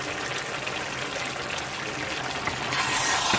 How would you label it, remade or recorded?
recorded